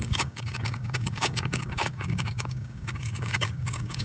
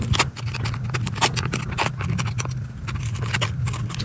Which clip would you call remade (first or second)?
first